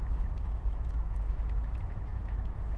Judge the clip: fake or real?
fake